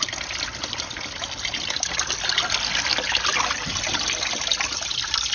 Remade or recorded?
recorded